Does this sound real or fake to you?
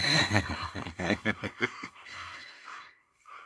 fake